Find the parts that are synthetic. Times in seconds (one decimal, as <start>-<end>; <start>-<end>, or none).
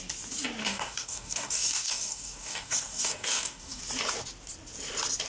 0.6-3.8